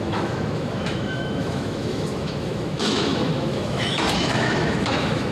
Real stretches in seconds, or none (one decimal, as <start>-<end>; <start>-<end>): none